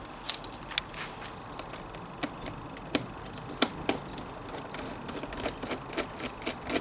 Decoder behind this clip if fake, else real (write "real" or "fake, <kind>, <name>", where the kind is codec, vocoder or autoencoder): real